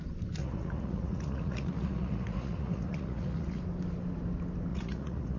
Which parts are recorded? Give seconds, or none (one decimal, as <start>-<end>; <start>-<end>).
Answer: 0.0-0.4; 3.6-4.7